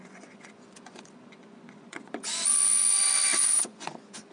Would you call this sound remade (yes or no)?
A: yes